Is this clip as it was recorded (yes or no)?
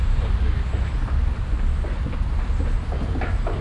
yes